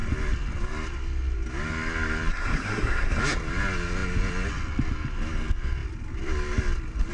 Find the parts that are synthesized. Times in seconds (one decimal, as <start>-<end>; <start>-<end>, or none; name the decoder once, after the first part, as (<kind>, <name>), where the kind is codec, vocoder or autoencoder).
2.3-3.2 (codec, SNAC)